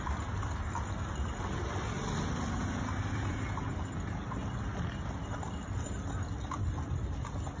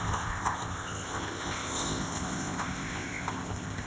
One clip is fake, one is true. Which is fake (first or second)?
second